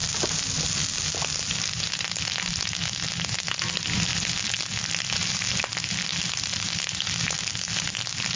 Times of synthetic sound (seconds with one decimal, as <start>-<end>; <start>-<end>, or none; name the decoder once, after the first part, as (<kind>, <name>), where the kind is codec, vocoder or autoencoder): none